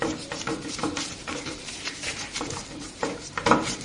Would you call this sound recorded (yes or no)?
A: no